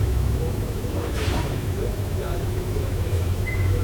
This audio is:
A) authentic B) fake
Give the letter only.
B